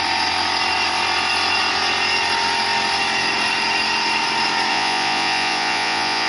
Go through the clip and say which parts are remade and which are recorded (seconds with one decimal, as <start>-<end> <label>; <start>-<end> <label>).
0.0-4.7 recorded; 4.7-6.3 remade